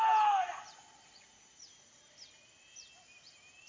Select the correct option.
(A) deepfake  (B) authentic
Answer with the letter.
B